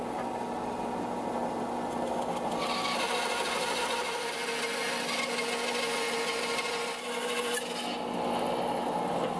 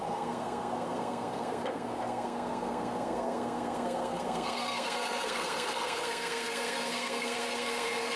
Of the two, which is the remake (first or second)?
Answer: second